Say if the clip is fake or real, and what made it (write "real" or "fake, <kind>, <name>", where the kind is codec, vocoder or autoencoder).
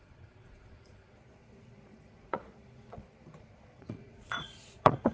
fake, vocoder, Vocos